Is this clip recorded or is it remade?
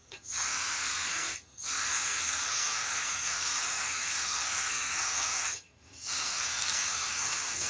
remade